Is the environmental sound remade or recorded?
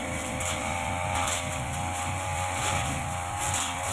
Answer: recorded